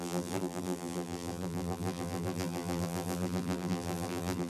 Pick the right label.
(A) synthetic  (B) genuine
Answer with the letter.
A